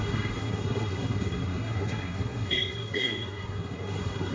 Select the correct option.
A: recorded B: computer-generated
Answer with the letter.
B